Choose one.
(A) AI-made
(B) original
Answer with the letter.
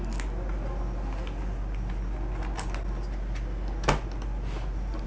B